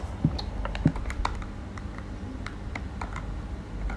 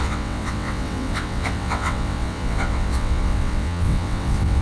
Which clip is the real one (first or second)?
first